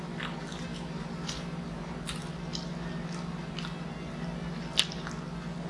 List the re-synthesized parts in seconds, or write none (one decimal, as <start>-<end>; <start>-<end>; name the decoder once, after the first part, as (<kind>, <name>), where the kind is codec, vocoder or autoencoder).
none